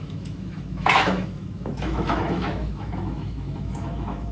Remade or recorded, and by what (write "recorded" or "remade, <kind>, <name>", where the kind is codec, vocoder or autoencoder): remade, autoencoder, DAC-VAE